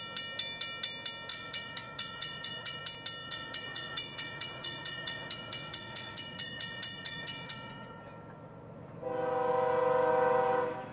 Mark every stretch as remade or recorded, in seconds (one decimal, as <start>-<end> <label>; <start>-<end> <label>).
0.0-1.3 recorded; 1.3-2.8 remade; 2.8-3.2 recorded; 3.2-8.0 remade; 8.0-10.9 recorded